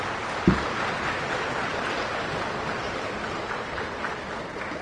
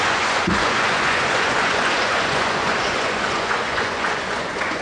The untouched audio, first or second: first